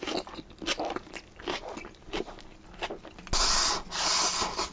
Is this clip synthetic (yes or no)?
no